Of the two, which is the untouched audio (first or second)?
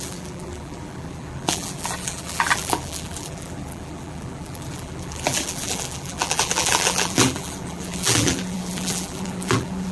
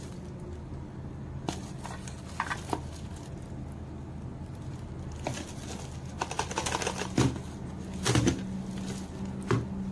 second